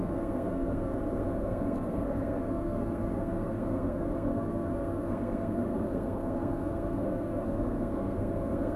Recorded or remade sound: remade